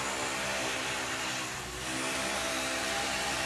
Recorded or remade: recorded